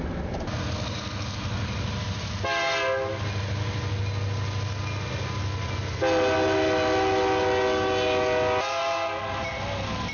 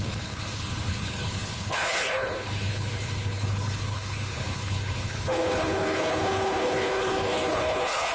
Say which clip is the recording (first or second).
first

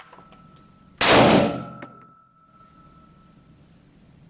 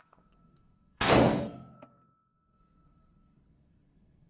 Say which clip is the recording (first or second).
first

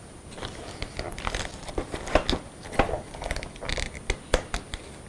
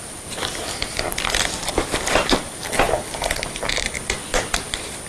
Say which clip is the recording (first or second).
first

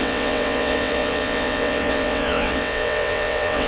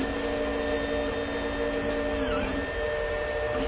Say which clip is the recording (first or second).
second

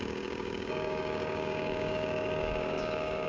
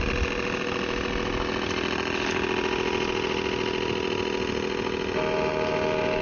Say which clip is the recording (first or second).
second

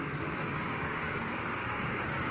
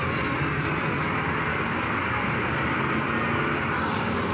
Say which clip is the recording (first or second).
second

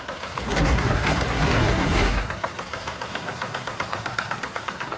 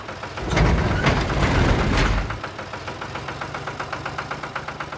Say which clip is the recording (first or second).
second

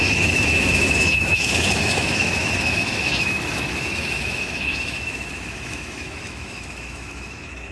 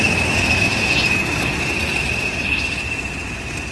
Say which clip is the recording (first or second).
second